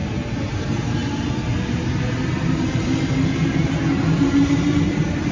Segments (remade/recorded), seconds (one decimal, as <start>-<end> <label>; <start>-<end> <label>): 0.0-5.3 recorded